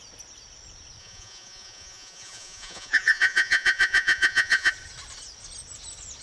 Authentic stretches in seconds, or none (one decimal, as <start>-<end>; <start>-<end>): 0.0-1.0; 4.7-6.2